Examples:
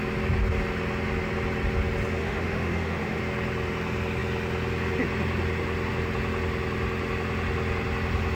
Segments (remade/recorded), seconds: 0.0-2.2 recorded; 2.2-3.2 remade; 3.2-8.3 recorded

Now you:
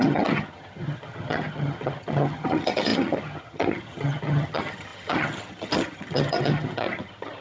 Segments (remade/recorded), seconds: 0.0-7.4 remade

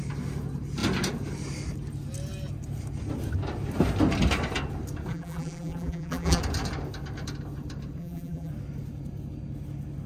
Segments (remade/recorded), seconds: 0.0-5.1 recorded; 5.1-6.4 remade; 6.4-8.0 recorded; 8.0-8.5 remade; 8.5-10.1 recorded